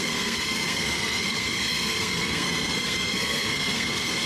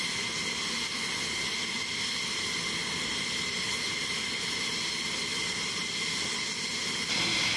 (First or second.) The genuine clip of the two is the second